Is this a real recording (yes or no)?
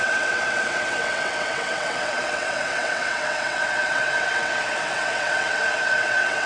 no